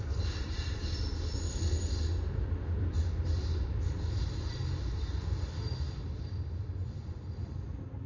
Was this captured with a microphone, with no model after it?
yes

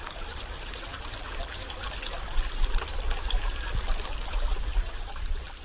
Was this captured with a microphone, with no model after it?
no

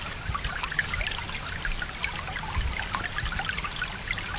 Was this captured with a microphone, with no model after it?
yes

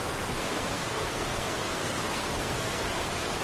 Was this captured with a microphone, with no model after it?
no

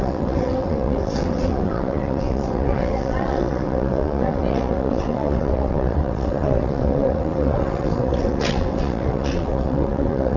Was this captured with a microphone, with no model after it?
no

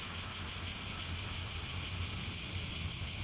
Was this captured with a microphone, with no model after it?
yes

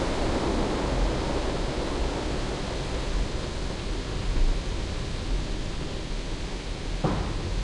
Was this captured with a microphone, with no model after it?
yes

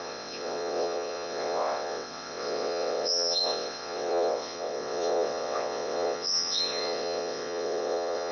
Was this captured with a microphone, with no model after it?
no